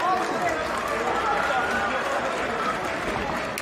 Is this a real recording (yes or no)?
yes